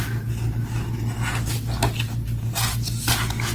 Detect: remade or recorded recorded